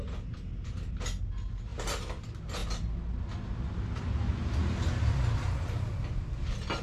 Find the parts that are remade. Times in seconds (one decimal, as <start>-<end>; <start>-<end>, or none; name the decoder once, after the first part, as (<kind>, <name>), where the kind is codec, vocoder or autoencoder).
1.7-2.2 (vocoder, BigVGAN v2)